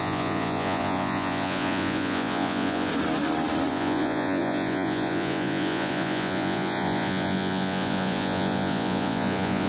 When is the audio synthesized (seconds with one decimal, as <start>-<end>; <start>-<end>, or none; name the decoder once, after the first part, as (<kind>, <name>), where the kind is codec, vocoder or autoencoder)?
0.0-2.9 (vocoder, Vocos); 3.7-9.7

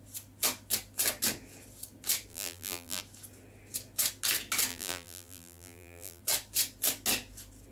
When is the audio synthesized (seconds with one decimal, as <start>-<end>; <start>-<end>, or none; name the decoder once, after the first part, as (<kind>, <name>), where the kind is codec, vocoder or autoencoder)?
2.3-3.0 (vocoder, BigVGAN v2); 4.7-6.2

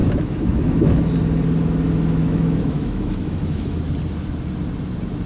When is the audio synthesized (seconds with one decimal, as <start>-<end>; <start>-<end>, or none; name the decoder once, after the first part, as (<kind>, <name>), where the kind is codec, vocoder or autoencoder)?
0.0-1.0 (autoencoder, DAC-VAE); 2.2-3.8

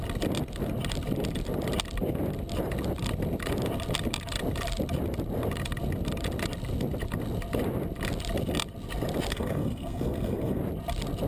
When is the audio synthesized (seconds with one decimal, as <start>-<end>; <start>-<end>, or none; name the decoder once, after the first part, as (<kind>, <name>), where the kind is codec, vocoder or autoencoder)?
9.3-10.6 (codec, SNAC)